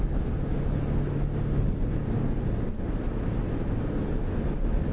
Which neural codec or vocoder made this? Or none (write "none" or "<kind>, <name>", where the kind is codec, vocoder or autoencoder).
none